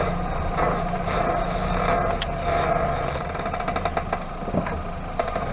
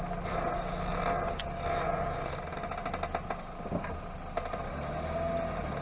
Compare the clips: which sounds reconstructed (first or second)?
first